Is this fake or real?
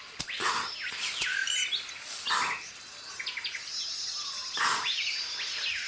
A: real